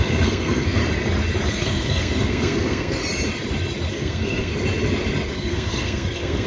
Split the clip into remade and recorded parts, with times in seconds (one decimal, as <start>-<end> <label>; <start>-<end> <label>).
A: 0.0-0.8 remade; 0.8-1.5 recorded; 1.5-3.0 remade; 3.0-3.9 recorded; 3.9-4.5 remade; 4.5-5.3 recorded; 5.3-6.5 remade